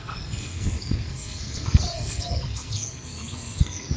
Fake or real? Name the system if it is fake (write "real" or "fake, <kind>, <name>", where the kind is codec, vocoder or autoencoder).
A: fake, codec, SNAC